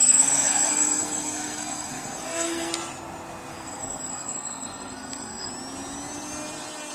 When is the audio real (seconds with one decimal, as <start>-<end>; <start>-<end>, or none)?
2.7-3.5; 5.5-6.9